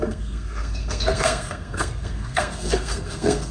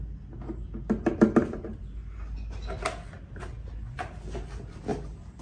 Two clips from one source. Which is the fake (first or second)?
first